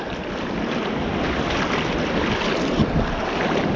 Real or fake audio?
real